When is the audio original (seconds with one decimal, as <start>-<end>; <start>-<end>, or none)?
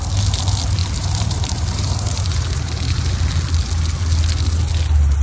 0.0-0.8; 3.1-5.2